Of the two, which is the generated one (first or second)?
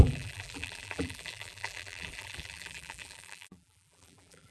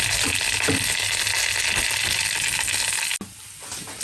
first